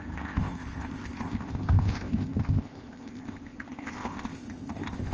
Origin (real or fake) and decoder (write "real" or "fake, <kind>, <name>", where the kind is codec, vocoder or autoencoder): fake, codec, ZipCodec